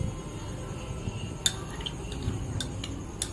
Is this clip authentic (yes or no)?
yes